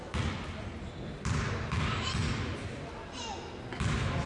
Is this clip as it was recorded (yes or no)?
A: yes